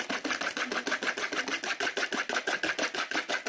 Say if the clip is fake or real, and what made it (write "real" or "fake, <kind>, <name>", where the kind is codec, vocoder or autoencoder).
real